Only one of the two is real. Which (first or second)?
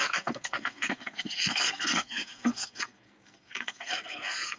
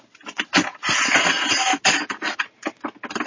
second